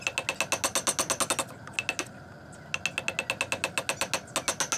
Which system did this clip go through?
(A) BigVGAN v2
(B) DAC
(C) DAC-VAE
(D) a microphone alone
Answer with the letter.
D